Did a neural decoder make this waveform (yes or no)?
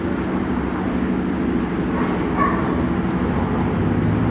no